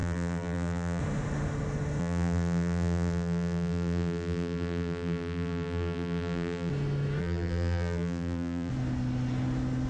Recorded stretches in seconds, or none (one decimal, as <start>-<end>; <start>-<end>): 1.0-2.0; 6.7-7.2; 8.7-9.9